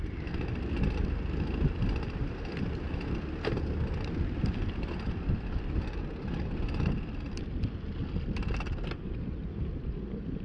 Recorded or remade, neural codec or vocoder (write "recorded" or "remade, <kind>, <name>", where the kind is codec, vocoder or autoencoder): recorded